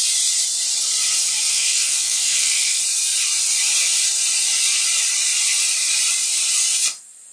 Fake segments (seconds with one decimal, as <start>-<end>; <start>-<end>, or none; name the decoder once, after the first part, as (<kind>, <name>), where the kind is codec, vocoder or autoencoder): 1.5-2.8 (codec, SNAC)